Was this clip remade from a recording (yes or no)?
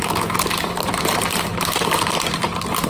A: yes